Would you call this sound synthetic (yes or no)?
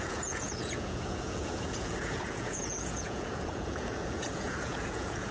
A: yes